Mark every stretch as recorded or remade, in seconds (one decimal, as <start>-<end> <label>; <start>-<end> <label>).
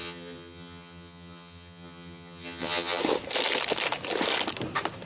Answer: 0.0-3.0 remade; 3.0-5.0 recorded